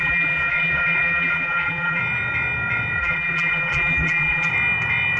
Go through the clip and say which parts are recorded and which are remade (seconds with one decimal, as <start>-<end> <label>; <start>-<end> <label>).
0.0-2.0 remade; 2.0-3.0 recorded; 3.0-4.5 remade; 4.5-5.2 recorded